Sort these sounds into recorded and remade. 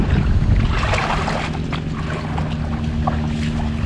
recorded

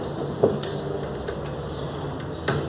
recorded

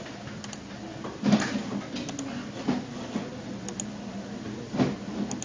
recorded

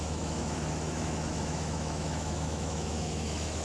remade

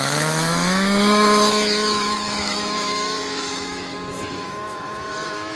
remade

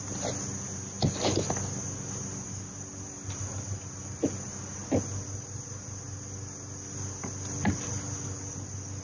recorded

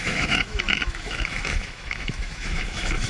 remade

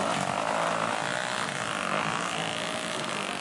recorded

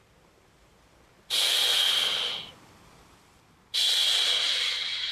recorded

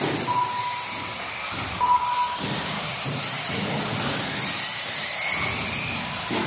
recorded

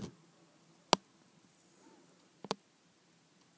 recorded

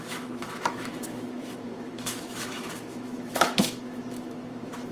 remade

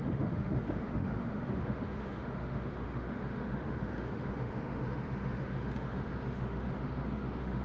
remade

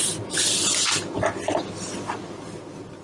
recorded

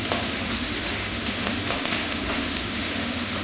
remade